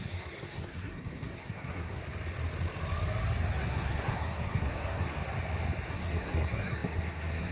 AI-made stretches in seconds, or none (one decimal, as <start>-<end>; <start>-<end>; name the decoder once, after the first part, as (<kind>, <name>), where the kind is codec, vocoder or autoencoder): 0.0-2.0 (codec, SNAC); 3.6-5.2; 5.9-7.5